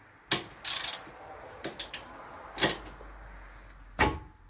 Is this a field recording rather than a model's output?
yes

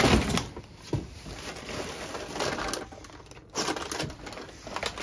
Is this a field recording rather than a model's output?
yes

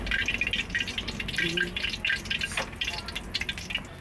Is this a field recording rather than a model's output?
yes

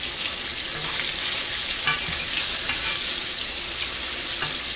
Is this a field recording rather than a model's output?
yes